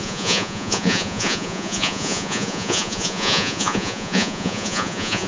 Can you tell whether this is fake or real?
fake